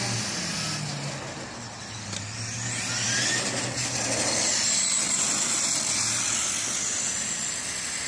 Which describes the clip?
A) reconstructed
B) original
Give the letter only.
B